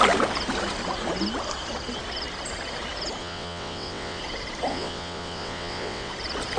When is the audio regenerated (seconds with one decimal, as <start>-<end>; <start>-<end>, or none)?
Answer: 3.2-4.2; 4.7-6.1